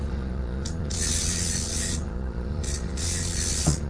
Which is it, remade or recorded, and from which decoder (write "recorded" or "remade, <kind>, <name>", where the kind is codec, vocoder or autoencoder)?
remade, vocoder, Vocos